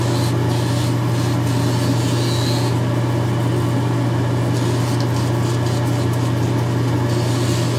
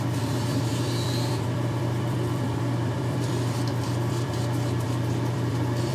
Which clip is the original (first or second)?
first